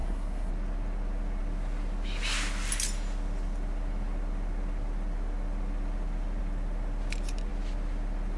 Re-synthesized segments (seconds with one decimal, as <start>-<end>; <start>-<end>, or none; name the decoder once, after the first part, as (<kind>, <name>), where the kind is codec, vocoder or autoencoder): 0.0-0.5 (codec, SNAC)